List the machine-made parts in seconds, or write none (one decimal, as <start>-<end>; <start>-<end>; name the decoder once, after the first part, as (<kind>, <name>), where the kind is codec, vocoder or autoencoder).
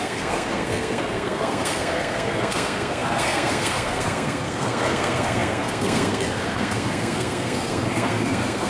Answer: 0.0-8.7 (codec, SNAC)